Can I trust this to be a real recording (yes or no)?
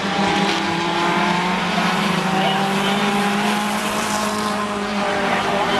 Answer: no